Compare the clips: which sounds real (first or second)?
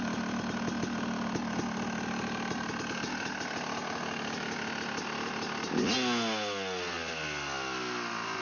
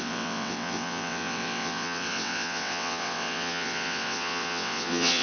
first